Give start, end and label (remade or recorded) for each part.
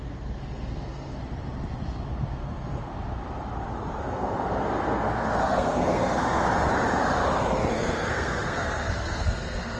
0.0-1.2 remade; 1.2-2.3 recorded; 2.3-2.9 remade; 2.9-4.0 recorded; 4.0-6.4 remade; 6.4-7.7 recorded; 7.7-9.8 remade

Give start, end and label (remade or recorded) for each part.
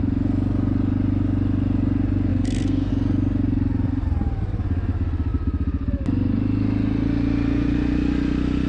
0.0-2.3 recorded; 2.3-2.9 remade; 2.9-8.7 recorded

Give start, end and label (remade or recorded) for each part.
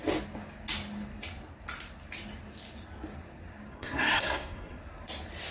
0.0-3.7 recorded; 3.7-4.8 remade; 4.8-5.5 recorded